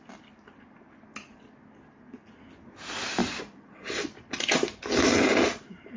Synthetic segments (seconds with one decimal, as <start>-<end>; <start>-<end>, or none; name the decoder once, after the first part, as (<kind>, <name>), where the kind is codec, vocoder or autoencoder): 3.2-4.8 (vocoder, BigVGAN v2)